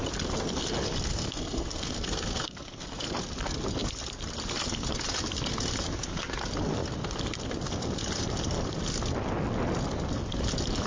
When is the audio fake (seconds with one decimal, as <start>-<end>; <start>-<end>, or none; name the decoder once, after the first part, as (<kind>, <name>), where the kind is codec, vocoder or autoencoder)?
1.1-3.0 (codec, SNAC)